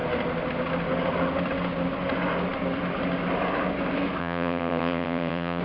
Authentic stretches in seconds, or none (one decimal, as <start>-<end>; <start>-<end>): 0.0-4.2